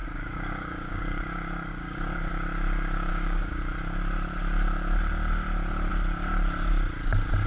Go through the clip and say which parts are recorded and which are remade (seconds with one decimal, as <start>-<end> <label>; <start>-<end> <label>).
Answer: 0.0-1.2 remade; 1.2-1.7 recorded; 1.7-2.3 remade; 2.3-3.1 recorded; 3.1-3.6 remade; 3.6-7.5 recorded

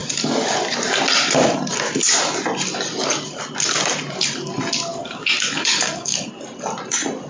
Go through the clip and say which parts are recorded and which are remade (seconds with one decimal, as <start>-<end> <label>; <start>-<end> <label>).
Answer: 0.0-4.9 recorded; 4.9-6.3 remade; 6.3-7.3 recorded

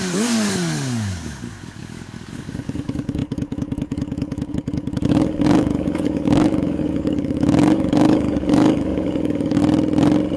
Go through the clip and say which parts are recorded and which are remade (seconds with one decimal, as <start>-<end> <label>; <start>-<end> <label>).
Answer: 0.0-9.6 remade; 9.6-10.4 recorded

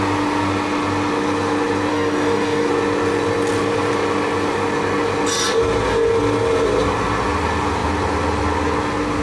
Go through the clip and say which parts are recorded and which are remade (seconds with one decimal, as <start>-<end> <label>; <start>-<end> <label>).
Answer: 0.0-1.9 recorded; 1.9-2.7 remade; 2.7-9.2 recorded

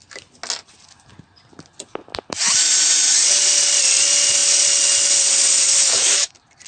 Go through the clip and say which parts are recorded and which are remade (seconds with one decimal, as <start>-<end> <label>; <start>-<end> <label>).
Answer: 0.0-5.7 recorded; 5.7-6.3 remade; 6.3-6.7 recorded